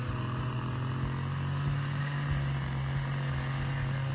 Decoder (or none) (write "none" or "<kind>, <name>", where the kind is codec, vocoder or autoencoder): none